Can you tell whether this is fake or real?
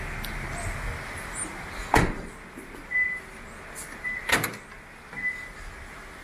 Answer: real